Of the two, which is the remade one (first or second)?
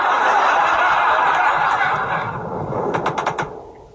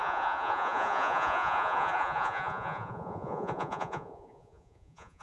second